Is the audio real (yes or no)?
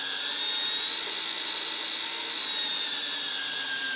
yes